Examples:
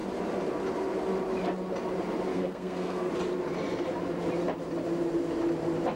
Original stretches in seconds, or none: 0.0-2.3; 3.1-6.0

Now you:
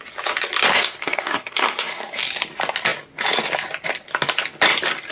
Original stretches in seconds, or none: 0.0-0.7; 2.2-5.1

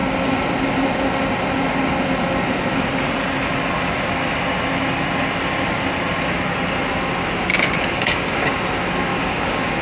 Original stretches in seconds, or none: 0.0-7.5; 8.5-9.1

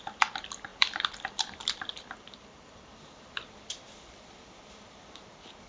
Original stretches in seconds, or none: none